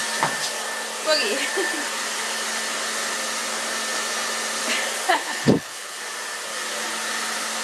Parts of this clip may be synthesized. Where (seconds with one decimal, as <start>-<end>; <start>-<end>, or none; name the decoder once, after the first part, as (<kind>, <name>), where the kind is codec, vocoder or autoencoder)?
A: 5.1-6.0 (codec, HILCodec)